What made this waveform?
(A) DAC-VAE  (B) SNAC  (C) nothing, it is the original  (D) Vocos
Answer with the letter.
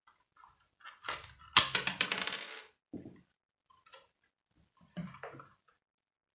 C